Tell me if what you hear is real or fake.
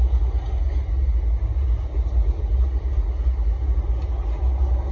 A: real